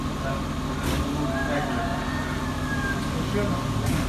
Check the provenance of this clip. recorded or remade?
recorded